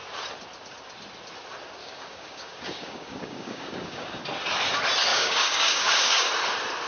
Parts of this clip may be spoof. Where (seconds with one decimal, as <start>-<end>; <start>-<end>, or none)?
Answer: 1.8-4.2; 5.1-6.3